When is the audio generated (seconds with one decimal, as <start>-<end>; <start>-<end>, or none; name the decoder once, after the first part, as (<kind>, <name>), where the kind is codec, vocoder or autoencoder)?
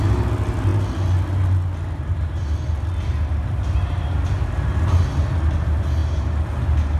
none